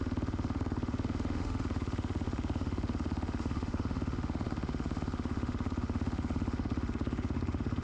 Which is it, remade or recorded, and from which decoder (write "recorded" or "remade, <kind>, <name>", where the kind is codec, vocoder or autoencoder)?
remade, autoencoder, DAC-VAE